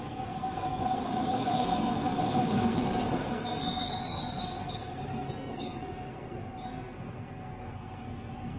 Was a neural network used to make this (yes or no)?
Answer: yes